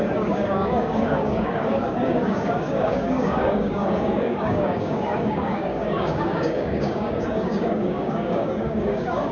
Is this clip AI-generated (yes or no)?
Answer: yes